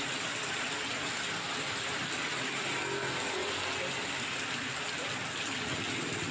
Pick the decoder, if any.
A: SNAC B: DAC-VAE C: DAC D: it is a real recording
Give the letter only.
D